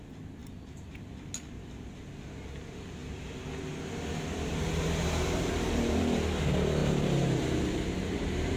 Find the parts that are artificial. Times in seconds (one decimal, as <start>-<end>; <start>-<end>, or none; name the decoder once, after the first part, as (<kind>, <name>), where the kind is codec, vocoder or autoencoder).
0.4-0.9 (vocoder, BigVGAN v2); 4.5-6.0; 6.8-8.6